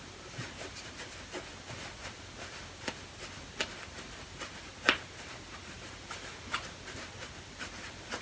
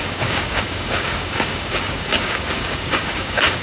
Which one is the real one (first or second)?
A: first